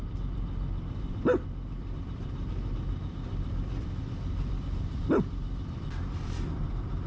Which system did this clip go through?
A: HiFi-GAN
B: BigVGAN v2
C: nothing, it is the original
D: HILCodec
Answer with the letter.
B